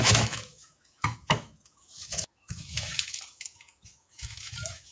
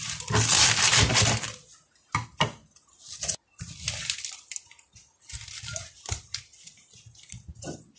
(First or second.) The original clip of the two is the second